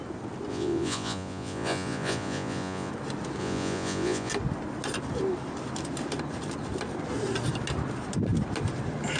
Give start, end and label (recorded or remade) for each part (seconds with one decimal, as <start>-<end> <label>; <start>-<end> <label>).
0.0-0.5 recorded; 0.5-2.9 remade; 2.9-3.4 recorded; 3.4-4.3 remade; 4.3-9.2 recorded